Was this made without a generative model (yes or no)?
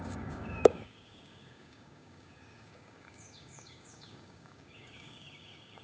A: no